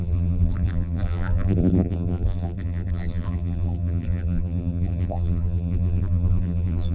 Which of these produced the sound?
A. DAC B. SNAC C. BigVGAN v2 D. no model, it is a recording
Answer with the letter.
C